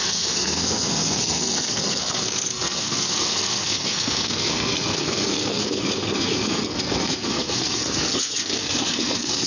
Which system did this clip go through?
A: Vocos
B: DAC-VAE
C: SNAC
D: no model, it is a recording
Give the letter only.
C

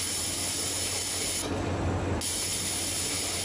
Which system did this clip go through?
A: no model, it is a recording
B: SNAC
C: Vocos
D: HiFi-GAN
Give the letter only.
A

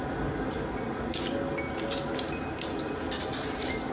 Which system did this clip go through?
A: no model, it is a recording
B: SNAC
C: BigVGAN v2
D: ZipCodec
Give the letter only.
A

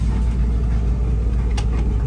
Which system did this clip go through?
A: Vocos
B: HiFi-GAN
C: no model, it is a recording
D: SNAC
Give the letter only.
C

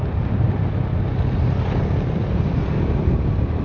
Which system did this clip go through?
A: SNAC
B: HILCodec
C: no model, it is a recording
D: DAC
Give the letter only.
C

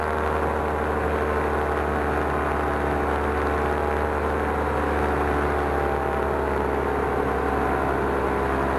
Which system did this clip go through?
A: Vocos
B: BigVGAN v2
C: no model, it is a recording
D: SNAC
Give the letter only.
C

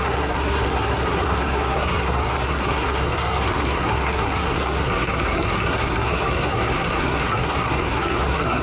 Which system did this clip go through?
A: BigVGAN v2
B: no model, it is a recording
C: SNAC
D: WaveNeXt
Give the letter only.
C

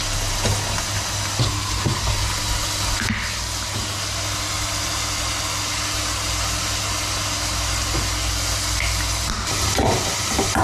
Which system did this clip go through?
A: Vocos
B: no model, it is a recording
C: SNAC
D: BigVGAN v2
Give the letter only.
B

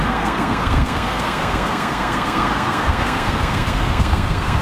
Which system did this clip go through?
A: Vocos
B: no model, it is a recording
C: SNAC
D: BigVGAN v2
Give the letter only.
C